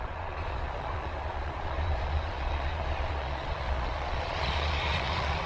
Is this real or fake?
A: fake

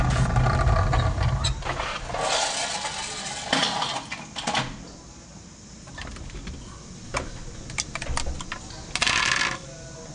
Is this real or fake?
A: real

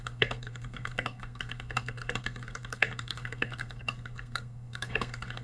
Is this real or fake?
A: fake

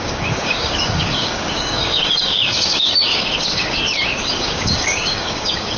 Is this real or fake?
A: fake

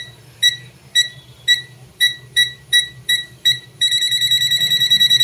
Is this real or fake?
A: fake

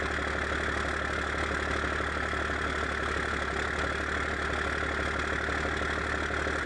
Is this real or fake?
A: real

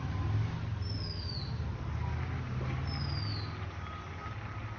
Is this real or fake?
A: real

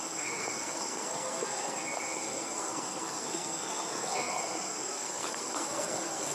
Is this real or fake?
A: fake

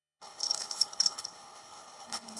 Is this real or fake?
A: fake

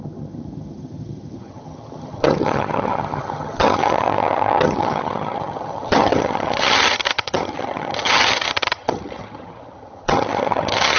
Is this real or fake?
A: fake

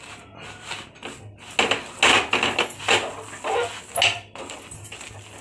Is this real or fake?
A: real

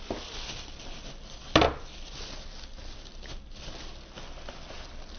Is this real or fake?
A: real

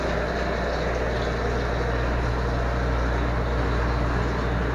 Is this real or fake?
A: real